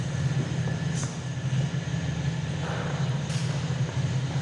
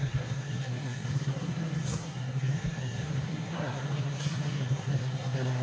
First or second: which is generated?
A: second